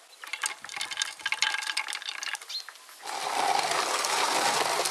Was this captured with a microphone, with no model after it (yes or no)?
yes